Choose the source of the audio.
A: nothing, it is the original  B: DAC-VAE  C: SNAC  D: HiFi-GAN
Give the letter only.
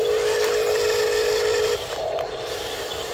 A